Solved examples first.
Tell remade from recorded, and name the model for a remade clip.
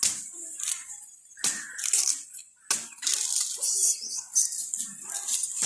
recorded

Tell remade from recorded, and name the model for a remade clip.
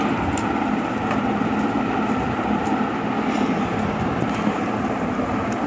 recorded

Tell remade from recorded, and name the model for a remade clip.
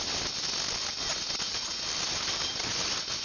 recorded